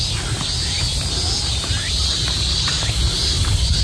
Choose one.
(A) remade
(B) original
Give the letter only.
B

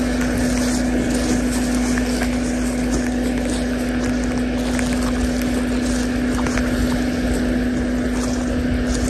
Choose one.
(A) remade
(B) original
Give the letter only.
B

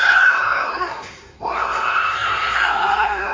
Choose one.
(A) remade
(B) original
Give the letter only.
A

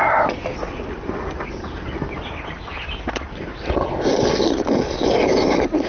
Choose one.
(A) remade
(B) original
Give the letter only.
B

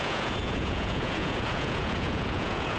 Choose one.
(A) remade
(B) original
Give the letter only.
A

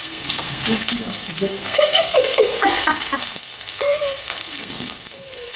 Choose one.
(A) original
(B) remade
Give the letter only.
B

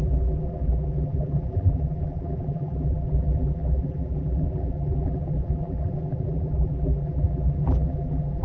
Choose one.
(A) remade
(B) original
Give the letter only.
A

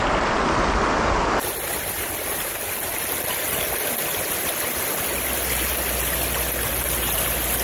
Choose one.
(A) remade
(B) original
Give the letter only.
B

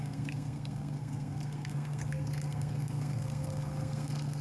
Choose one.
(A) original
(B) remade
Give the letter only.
B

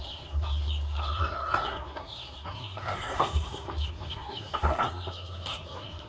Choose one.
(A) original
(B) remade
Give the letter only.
B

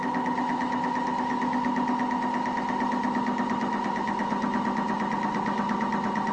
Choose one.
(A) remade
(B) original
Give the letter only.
B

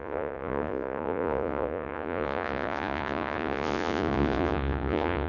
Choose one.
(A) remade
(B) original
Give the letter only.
A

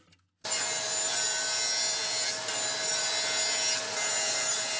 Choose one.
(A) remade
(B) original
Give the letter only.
B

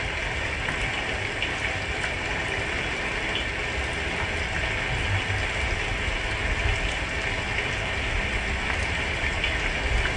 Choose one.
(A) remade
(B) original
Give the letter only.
B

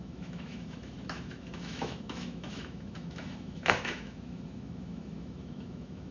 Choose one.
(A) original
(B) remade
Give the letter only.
B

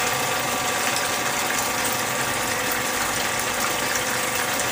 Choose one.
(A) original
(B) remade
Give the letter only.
A